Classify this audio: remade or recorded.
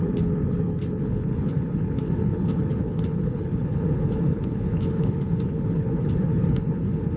remade